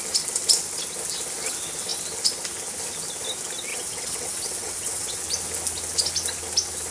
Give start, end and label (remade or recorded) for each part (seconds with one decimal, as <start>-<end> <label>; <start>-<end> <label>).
0.0-3.7 recorded; 3.7-5.2 remade; 5.2-6.9 recorded